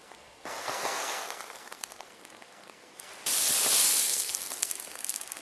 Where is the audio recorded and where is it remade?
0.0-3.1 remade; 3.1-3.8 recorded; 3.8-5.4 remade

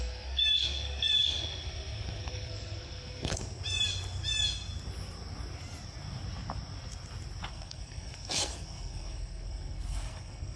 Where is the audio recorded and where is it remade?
0.0-3.6 remade; 3.6-7.5 recorded; 7.5-10.6 remade

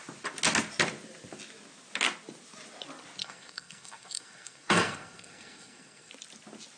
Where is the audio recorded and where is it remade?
0.0-3.2 recorded; 3.2-6.1 remade; 6.1-6.8 recorded

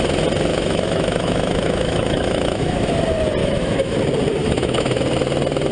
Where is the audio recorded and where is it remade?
0.0-0.5 recorded; 0.5-2.9 remade; 2.9-3.4 recorded; 3.4-4.0 remade; 4.0-4.4 recorded; 4.4-5.0 remade; 5.0-5.7 recorded

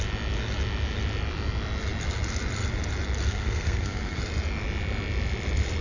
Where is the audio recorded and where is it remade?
0.0-3.3 recorded; 3.3-4.2 remade; 4.2-5.8 recorded

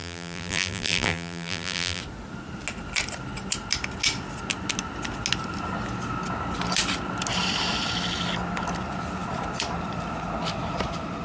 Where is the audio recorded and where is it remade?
0.0-2.0 remade; 2.0-11.2 recorded

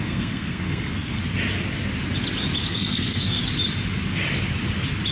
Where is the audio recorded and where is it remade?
0.0-1.2 remade; 1.2-2.6 recorded; 2.6-3.4 remade; 3.4-5.1 recorded

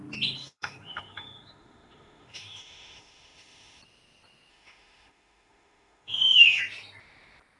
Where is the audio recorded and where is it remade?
0.0-0.4 recorded; 0.4-3.8 remade; 3.8-4.5 recorded; 4.5-6.6 remade; 6.6-7.6 recorded